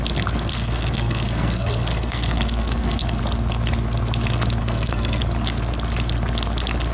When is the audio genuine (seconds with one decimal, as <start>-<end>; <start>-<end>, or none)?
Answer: 0.0-0.5; 3.2-4.6; 5.2-6.9